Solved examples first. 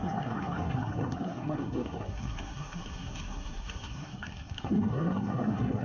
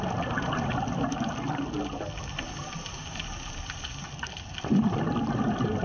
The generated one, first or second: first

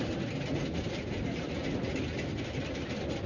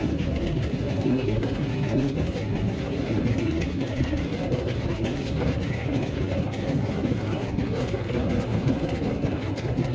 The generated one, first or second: second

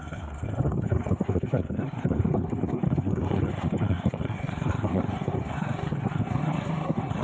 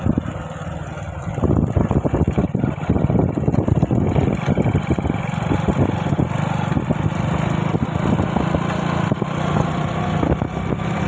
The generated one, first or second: first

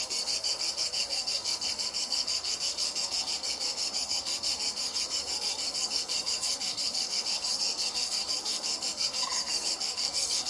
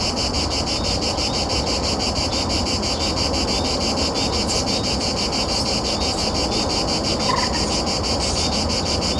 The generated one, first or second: first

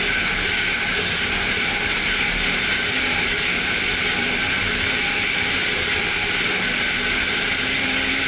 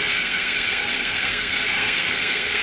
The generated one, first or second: second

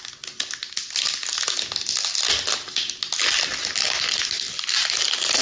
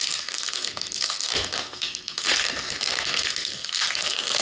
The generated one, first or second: second